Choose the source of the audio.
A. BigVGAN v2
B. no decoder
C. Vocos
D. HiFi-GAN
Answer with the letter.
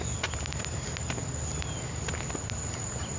B